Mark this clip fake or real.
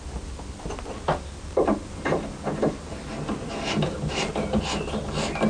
real